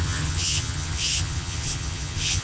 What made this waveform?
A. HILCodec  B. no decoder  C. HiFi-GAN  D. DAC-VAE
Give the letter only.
C